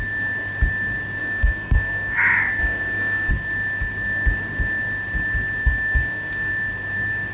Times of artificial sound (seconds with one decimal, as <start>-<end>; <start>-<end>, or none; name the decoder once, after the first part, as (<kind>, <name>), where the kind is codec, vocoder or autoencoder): 1.2-2.2 (codec, SNAC); 2.6-3.3; 5.6-6.5